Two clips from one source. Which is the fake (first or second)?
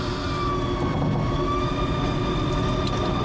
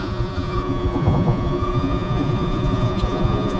second